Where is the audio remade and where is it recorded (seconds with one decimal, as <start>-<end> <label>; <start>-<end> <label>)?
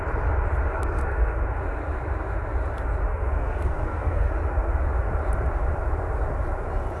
0.0-0.7 recorded; 0.7-1.4 remade; 1.4-3.1 recorded; 3.1-4.3 remade; 4.3-7.0 recorded